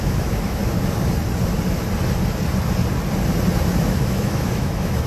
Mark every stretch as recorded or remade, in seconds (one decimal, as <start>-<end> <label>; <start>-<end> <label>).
0.0-0.6 remade; 0.6-3.7 recorded; 3.7-5.1 remade